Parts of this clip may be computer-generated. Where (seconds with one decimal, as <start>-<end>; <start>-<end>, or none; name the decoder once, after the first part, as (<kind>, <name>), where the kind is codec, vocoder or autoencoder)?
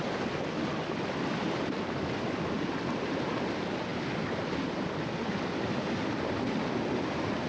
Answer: none